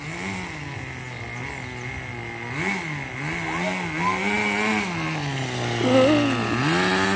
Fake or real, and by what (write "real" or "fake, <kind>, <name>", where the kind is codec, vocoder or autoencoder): real